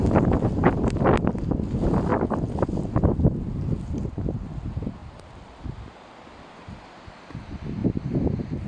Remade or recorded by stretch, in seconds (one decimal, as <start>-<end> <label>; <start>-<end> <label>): 0.0-5.0 recorded; 5.0-5.7 remade; 5.7-7.8 recorded; 7.8-8.7 remade

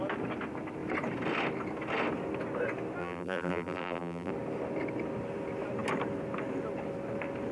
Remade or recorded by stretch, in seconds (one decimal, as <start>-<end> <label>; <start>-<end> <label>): 0.0-3.0 recorded; 3.0-4.3 remade; 4.3-7.5 recorded